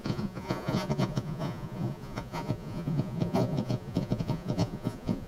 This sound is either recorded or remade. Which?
remade